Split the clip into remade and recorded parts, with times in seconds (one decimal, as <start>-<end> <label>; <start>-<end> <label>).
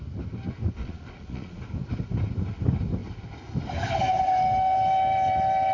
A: 0.0-0.8 recorded; 0.8-1.6 remade; 1.6-5.7 recorded